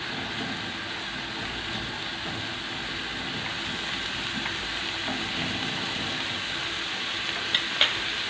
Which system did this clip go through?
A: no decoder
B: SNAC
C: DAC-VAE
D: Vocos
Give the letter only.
A